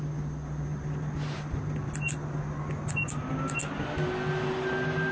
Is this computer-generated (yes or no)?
no